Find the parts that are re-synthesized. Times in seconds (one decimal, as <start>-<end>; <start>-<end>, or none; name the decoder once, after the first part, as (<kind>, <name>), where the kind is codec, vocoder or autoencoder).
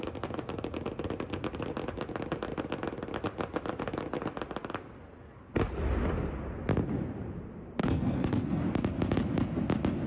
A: 7.8-8.6 (codec, SNAC)